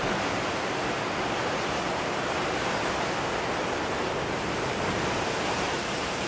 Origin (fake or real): fake